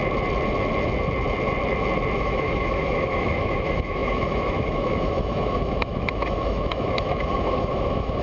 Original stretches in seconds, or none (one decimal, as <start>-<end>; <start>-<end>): 0.0-2.2